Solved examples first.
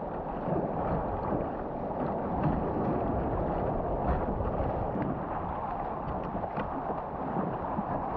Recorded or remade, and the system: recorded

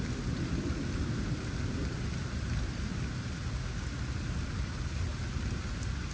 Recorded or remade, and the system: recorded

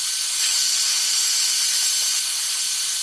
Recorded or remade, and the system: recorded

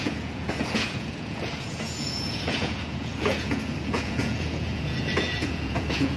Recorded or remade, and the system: remade, vocoder, Vocos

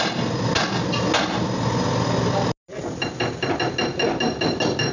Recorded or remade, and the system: recorded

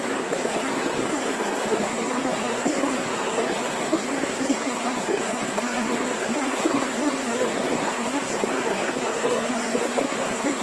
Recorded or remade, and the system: remade, codec, SNAC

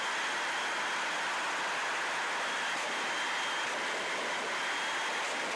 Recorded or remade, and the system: remade, vocoder, BigVGAN v2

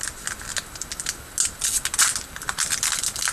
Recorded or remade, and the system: recorded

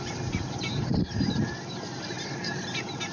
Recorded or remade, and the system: recorded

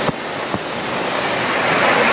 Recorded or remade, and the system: recorded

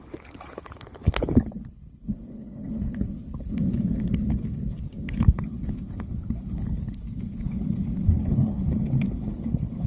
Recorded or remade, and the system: remade, codec, HILCodec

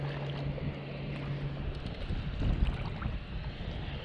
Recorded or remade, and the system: recorded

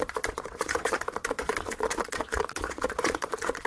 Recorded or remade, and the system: remade, vocoder, Vocos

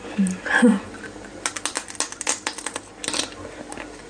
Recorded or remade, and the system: recorded